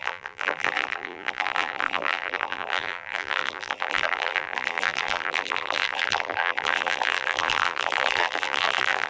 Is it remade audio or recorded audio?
remade